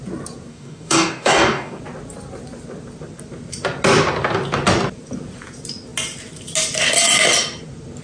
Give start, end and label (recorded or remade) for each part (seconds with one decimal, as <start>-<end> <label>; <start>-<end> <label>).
0.0-0.5 recorded; 0.5-1.8 remade; 1.8-8.0 recorded